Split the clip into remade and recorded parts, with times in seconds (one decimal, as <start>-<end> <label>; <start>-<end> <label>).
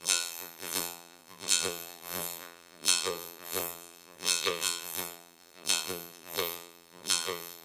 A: 0.0-7.6 remade